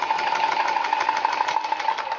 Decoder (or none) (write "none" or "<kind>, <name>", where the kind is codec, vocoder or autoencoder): none